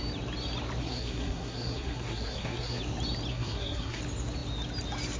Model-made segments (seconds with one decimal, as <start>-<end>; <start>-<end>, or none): 0.8-2.8; 3.3-4.0